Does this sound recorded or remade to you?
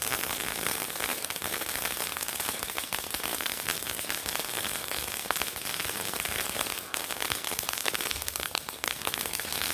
remade